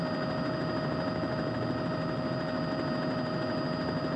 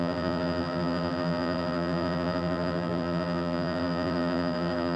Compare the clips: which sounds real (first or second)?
first